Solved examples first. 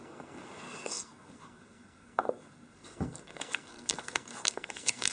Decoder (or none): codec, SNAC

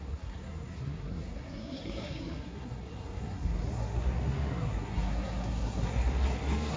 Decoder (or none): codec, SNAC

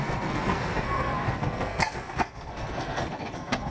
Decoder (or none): codec, SNAC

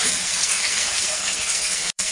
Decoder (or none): codec, SNAC